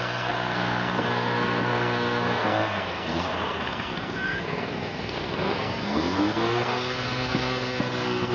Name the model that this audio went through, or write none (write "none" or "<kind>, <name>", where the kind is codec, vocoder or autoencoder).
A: codec, SNAC